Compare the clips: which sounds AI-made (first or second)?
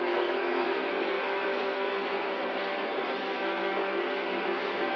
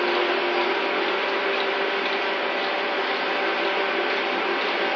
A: first